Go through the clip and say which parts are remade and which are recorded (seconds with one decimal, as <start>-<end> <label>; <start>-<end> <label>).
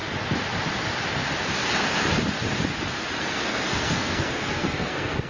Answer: 0.0-3.2 recorded; 3.2-5.3 remade